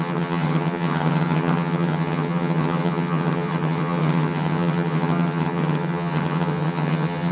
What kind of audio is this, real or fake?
fake